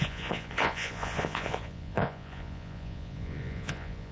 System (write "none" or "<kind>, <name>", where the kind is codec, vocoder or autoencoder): vocoder, Vocos